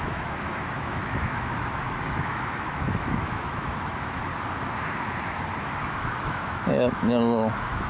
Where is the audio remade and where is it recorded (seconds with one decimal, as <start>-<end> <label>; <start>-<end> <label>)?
0.0-4.3 remade; 4.3-5.6 recorded; 5.6-7.9 remade